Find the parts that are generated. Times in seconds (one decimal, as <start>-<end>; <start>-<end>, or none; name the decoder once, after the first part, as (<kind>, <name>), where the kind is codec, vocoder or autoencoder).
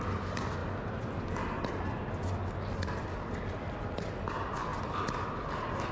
none